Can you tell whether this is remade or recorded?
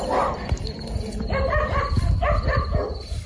recorded